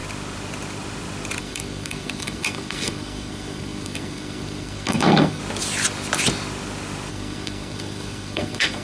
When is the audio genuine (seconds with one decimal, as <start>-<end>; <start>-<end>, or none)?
0.0-1.4; 5.4-7.1